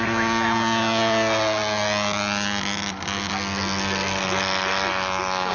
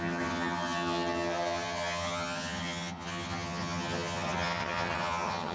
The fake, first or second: second